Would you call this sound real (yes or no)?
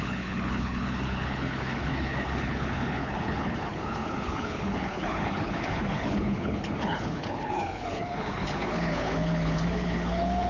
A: no